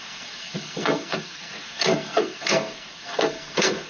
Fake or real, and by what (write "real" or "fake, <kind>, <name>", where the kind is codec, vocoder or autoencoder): fake, codec, SNAC